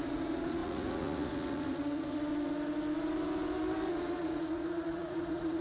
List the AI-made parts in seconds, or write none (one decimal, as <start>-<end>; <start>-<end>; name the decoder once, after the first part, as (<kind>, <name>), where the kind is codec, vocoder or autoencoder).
0.0-2.3 (vocoder, Vocos); 3.9-5.6

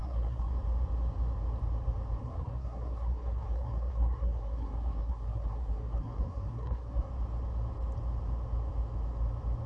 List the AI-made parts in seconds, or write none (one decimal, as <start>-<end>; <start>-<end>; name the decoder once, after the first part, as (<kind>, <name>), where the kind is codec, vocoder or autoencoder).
0.0-0.5 (codec, SNAC); 2.2-7.1

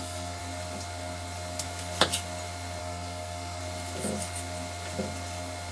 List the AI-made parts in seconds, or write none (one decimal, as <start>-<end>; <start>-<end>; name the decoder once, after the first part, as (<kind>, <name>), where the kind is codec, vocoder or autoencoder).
0.0-0.4 (codec, SNAC); 2.8-3.6

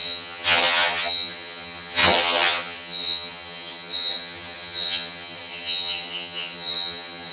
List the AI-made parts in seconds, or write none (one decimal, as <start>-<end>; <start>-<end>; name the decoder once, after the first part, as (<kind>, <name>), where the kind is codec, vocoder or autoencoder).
0.0-7.3 (vocoder, HiFi-GAN)

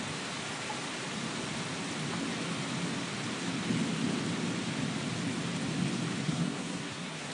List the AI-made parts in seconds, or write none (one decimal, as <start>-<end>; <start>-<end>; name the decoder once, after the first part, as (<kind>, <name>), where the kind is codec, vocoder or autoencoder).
6.2-7.3 (codec, SNAC)

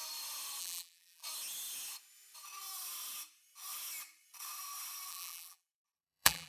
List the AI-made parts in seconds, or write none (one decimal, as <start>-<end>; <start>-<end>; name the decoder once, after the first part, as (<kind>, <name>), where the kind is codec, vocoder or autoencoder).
0.6-1.2 (vocoder, BigVGAN v2); 5.1-6.5

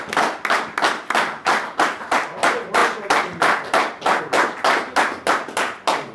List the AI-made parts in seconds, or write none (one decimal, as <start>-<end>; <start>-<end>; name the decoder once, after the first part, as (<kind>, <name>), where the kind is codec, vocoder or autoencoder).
none

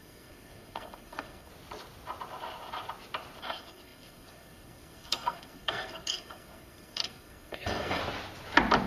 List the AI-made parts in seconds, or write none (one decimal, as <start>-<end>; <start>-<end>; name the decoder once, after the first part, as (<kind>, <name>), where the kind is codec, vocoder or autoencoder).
0.0-1.5 (codec, SNAC); 3.4-8.0